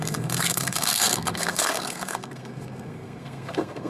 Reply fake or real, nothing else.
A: fake